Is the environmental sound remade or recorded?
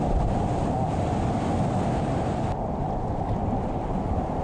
recorded